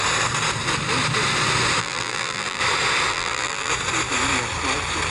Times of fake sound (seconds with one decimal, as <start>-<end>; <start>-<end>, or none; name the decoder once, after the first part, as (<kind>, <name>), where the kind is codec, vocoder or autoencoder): 1.8-2.6 (vocoder, BigVGAN v2); 3.1-3.7